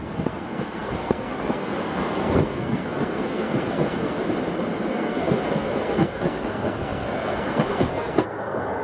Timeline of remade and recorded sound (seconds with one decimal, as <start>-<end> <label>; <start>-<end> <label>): 0.0-4.2 remade; 4.2-4.9 recorded; 4.9-8.8 remade